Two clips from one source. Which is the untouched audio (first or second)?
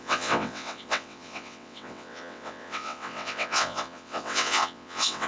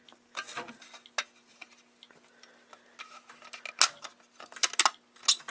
second